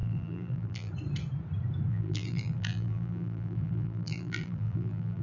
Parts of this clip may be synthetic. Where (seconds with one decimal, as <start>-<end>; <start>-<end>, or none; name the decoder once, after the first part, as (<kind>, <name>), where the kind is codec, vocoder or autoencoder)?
0.0-0.9 (vocoder, BigVGAN v2); 1.9-5.2